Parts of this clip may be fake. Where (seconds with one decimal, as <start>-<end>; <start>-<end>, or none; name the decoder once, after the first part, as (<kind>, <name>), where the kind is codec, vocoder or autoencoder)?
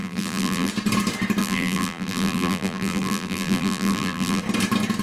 0.0-0.7 (vocoder, BigVGAN v2); 1.4-4.4